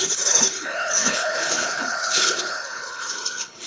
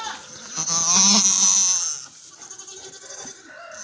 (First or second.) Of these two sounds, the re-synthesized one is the first